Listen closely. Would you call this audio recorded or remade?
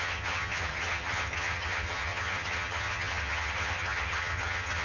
remade